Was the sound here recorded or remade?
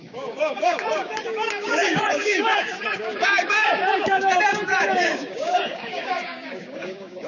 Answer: remade